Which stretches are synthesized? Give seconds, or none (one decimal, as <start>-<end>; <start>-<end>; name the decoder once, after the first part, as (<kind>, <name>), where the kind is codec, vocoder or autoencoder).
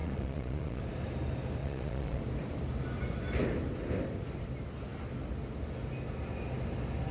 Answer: 0.0-0.8 (vocoder, Vocos); 1.6-2.2